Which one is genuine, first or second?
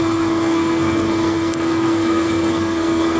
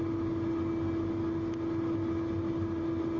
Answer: second